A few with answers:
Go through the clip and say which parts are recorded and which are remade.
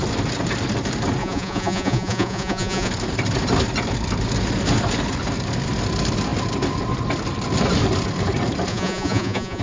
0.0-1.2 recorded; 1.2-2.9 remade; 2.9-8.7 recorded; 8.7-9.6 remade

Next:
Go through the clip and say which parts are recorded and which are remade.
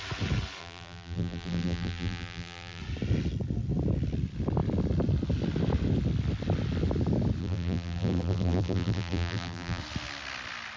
0.0-0.6 recorded; 0.6-2.8 remade; 2.8-7.4 recorded; 7.4-9.8 remade; 9.8-10.8 recorded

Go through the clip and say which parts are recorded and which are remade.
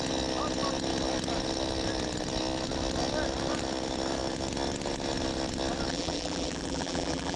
0.0-5.9 recorded; 5.9-7.4 remade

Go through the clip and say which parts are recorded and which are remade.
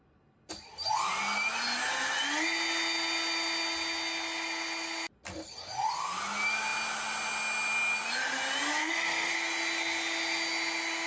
0.0-8.8 recorded; 8.8-9.3 remade; 9.3-11.1 recorded